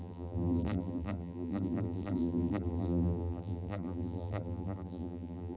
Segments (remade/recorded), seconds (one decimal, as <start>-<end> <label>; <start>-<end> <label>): 0.0-5.6 remade